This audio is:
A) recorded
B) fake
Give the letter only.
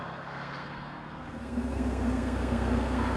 B